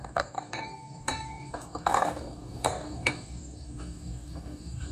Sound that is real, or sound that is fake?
fake